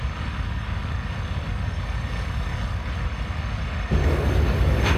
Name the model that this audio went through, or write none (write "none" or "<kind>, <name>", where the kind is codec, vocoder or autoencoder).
codec, DAC